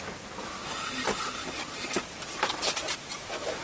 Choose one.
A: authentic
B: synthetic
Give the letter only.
A